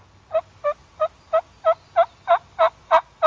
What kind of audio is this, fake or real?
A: real